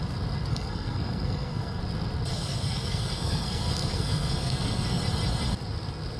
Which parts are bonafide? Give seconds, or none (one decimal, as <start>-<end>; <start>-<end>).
0.0-0.5; 1.8-2.3; 5.0-6.2